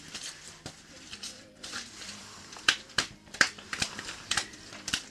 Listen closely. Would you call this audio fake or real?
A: fake